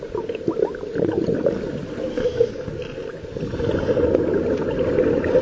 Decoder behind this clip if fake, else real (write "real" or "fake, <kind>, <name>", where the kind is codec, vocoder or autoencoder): real